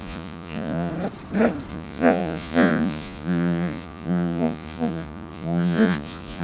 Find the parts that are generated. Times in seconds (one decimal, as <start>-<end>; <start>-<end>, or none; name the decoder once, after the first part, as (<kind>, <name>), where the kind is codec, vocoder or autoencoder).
0.0-0.9 (vocoder, Vocos); 1.7-6.4